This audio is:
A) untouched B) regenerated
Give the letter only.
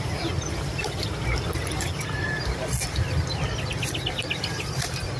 A